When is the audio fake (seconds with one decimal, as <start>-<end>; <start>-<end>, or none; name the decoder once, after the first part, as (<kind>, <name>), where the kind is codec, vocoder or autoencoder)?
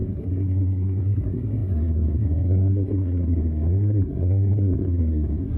0.0-5.6 (codec, SNAC)